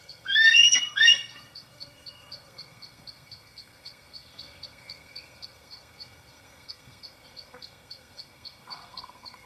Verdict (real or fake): fake